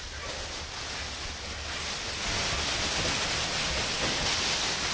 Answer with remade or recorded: recorded